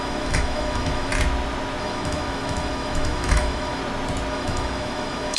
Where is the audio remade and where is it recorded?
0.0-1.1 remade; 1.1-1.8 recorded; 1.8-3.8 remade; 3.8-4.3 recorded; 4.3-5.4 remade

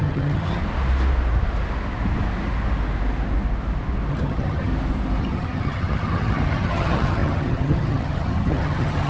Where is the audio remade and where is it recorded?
0.0-0.6 remade; 0.6-4.1 recorded; 4.1-4.7 remade; 4.7-5.2 recorded; 5.2-9.1 remade

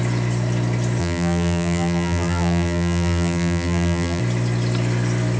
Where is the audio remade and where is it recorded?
0.0-1.0 recorded; 1.0-4.2 remade; 4.2-5.4 recorded

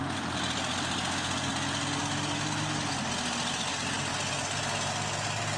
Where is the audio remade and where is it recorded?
0.0-5.6 recorded

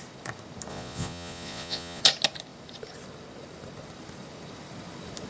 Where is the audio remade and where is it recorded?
0.0-0.7 recorded; 0.7-2.0 remade; 2.0-5.3 recorded

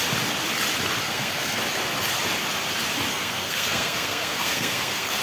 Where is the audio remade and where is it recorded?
0.0-1.0 recorded; 1.0-1.6 remade; 1.6-3.1 recorded; 3.1-5.2 remade

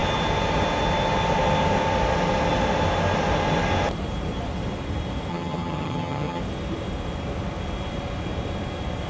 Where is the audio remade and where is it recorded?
0.0-5.3 recorded; 5.3-6.4 remade; 6.4-9.1 recorded